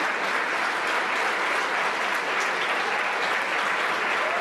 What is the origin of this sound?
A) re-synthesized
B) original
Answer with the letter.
B